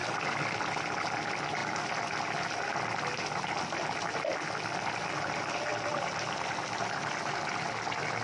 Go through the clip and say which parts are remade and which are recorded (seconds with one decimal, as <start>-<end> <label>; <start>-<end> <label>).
0.0-5.7 recorded; 5.7-6.3 remade; 6.3-8.2 recorded